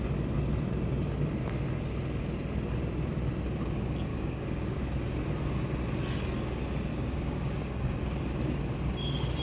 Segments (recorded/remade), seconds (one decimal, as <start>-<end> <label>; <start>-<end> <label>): 0.0-4.1 recorded; 4.1-4.8 remade; 4.8-6.9 recorded; 6.9-8.0 remade; 8.0-9.4 recorded

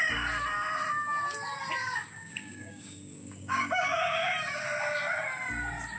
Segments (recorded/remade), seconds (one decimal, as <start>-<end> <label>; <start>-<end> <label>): 0.0-1.8 recorded; 1.8-4.3 remade; 4.3-6.0 recorded

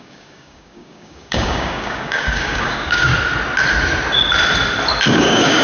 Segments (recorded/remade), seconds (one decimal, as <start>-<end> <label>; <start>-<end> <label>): 0.0-3.1 remade; 3.1-5.1 recorded; 5.1-5.6 remade

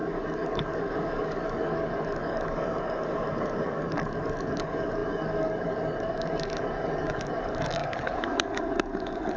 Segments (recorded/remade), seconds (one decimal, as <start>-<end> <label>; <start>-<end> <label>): 0.0-9.4 remade